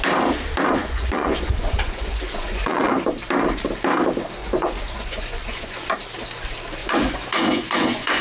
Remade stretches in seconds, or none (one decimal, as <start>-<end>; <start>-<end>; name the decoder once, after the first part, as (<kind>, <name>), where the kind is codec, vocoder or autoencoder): 0.8-2.9 (vocoder, Vocos); 4.4-5.9; 6.8-8.2